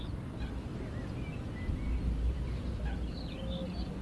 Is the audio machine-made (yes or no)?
no